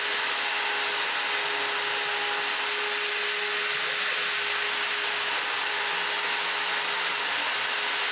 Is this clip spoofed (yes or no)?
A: no